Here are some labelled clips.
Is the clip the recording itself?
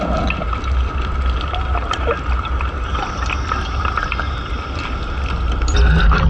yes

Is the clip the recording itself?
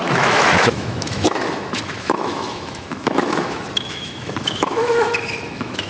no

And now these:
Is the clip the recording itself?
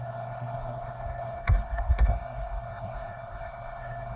no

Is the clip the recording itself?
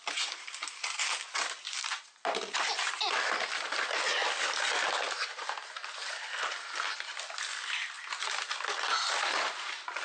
yes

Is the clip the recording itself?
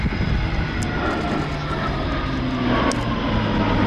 yes